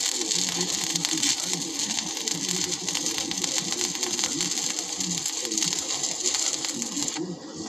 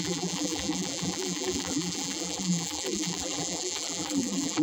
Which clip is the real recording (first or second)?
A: first